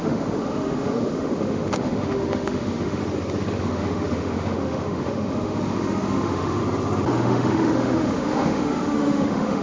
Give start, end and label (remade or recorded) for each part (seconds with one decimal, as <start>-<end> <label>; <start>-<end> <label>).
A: 0.0-3.0 remade; 3.0-3.6 recorded; 3.6-6.6 remade; 6.6-7.1 recorded; 7.1-9.6 remade